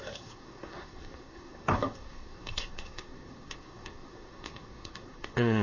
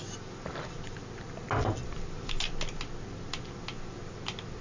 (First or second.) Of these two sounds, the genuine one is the second